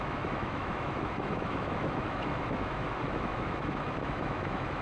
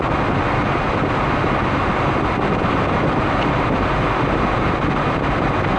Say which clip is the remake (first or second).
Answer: first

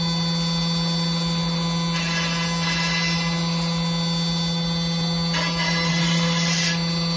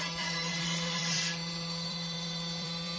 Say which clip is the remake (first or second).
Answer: second